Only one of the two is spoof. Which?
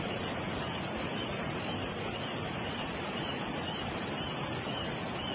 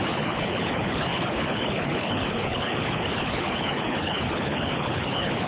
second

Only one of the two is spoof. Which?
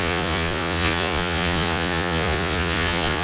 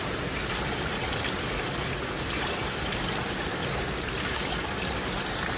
first